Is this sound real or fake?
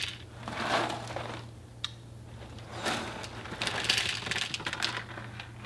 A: real